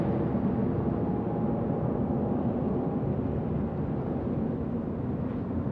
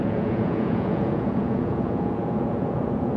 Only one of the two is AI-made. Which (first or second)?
second